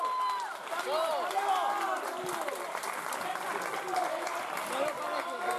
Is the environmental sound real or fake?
real